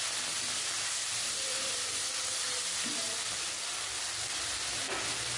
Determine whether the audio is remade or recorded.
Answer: recorded